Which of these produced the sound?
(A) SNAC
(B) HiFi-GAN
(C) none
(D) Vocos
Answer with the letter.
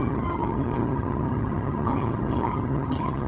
B